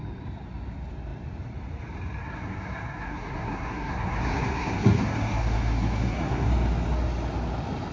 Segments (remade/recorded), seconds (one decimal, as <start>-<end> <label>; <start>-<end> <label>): 0.0-2.2 recorded; 2.2-6.5 remade; 6.5-7.9 recorded